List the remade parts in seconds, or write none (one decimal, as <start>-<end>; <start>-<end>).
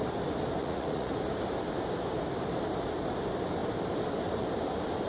0.6-1.1